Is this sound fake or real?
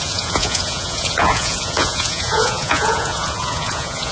fake